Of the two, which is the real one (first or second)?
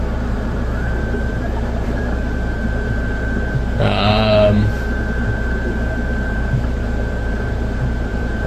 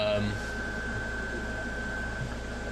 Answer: second